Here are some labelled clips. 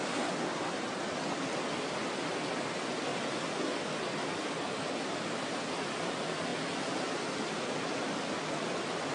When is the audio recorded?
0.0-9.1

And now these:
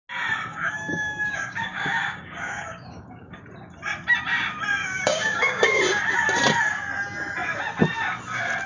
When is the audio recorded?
0.0-0.5; 3.4-4.8; 5.8-8.7

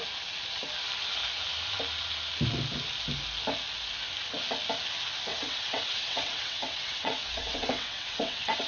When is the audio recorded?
0.0-5.3

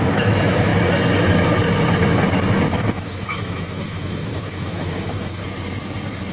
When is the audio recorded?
0.7-2.7; 5.4-6.3

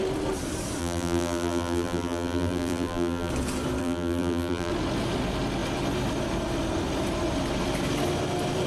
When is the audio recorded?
0.0-0.8; 3.3-3.8; 4.7-8.7

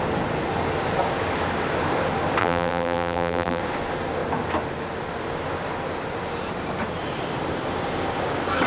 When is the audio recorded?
0.0-2.4; 3.6-8.7

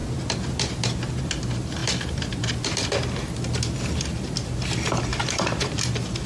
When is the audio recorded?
0.0-1.8; 3.3-5.1; 5.8-6.3

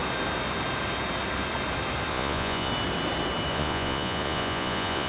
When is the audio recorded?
0.0-2.1; 2.7-3.5